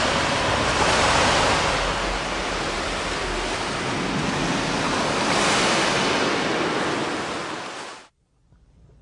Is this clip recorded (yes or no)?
yes